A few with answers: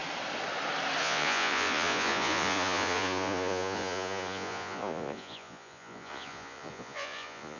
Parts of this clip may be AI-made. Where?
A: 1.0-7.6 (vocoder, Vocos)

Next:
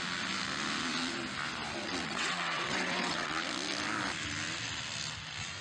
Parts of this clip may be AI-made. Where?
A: 1.8-3.4 (vocoder, WaveNeXt)

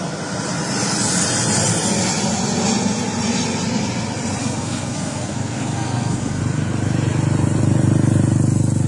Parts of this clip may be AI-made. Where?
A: 4.4-6.4 (codec, SNAC)

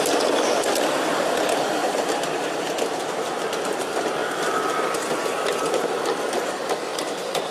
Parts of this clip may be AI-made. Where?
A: 1.8-2.6 (vocoder, BigVGAN v2); 4.2-6.0; 6.9-7.5

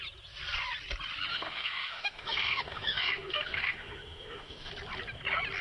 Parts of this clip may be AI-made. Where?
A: 1.3-4.7 (autoencoder, DAC-VAE)

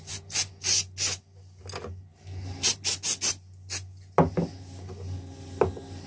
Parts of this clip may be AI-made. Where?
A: none